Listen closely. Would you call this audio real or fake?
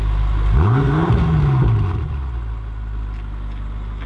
real